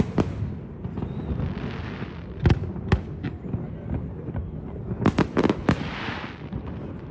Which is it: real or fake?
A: real